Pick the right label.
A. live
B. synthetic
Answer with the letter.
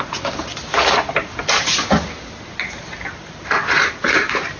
A